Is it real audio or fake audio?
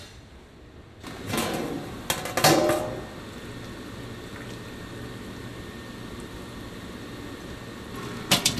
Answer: real